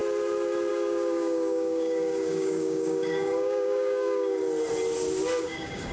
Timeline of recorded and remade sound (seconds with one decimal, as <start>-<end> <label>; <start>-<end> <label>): 0.0-0.7 recorded; 0.7-4.4 remade; 4.4-5.4 recorded; 5.4-5.9 remade